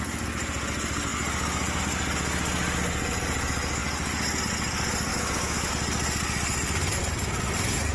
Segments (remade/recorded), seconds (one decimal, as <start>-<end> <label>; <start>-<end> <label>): 0.0-5.1 recorded; 5.1-5.7 remade; 5.7-7.9 recorded